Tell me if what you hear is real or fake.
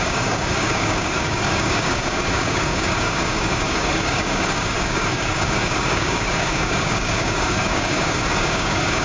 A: fake